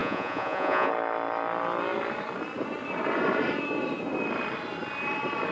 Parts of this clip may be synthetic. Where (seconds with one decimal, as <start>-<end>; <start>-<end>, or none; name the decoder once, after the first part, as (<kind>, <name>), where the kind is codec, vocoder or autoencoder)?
0.0-0.9 (vocoder, Vocos)